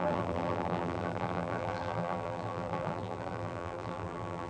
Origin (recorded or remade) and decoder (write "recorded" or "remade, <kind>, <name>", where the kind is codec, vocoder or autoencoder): remade, vocoder, BigVGAN v2